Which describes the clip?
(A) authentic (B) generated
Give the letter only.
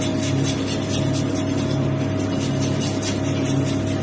A